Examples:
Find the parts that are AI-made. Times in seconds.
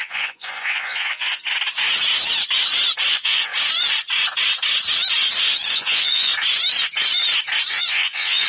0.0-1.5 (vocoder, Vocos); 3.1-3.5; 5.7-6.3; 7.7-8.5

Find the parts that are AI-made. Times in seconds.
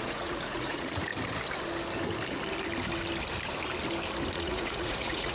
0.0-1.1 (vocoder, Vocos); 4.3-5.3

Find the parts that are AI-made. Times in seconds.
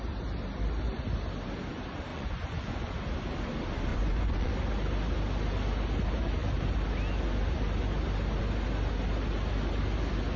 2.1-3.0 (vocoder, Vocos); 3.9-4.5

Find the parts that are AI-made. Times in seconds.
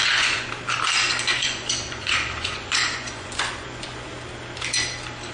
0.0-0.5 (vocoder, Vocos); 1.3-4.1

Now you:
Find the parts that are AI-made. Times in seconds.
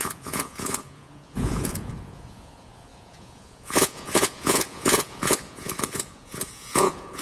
0.0-7.2 (vocoder, Vocos)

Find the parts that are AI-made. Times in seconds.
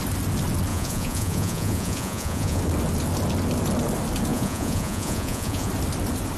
0.7-2.6 (vocoder, Vocos); 4.3-5.7